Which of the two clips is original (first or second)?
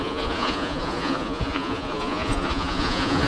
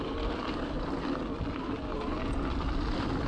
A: second